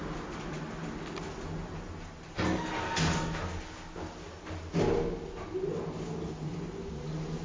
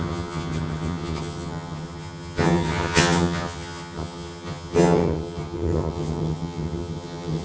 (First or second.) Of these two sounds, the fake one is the second